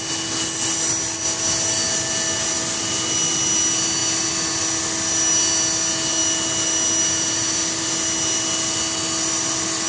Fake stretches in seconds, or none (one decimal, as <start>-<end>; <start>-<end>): none